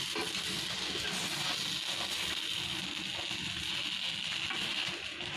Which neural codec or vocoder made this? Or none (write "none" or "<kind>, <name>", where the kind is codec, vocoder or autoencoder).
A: none